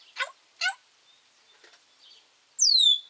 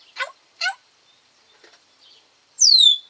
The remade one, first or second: second